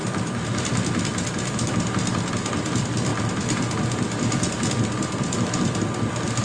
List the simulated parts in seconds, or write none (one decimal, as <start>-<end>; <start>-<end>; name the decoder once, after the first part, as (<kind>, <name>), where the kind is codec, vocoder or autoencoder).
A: 0.0-3.1 (vocoder, BigVGAN v2); 4.7-6.4